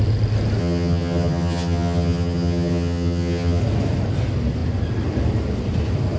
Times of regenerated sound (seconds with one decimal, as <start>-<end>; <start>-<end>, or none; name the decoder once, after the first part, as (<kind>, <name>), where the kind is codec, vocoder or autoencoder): 0.6-3.6 (vocoder, HiFi-GAN)